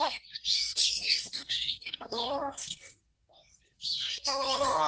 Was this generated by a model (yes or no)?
yes